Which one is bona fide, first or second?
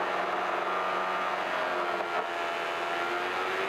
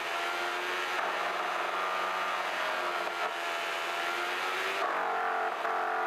first